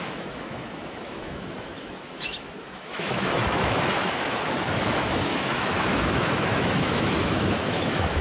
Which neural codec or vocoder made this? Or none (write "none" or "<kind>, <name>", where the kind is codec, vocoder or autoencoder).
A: autoencoder, DAC-VAE